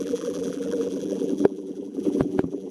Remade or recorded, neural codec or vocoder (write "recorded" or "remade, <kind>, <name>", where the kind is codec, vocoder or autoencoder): remade, vocoder, BigVGAN v2